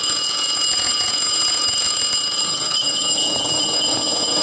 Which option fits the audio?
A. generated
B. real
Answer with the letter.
A